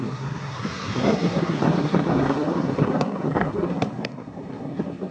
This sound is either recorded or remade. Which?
remade